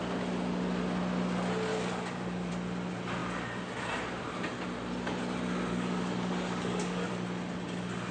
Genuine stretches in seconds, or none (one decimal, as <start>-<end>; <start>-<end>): 0.0-1.7; 2.5-5.7; 7.1-8.1